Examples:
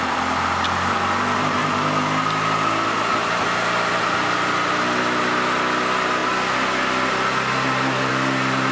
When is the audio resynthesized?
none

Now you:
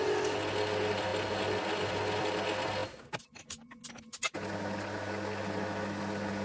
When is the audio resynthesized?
none